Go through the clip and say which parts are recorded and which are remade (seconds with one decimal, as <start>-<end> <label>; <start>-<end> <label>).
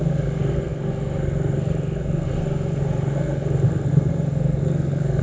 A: 0.0-5.2 remade